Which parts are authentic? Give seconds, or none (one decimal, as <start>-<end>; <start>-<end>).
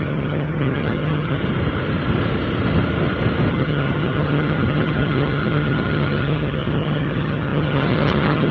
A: 1.4-3.5